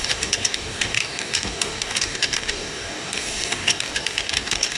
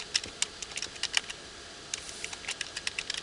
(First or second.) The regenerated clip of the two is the first